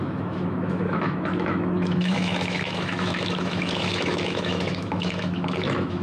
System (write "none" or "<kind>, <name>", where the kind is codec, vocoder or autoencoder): autoencoder, DAC-VAE